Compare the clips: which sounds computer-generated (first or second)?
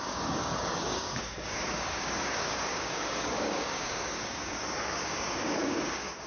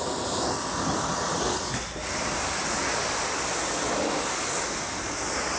first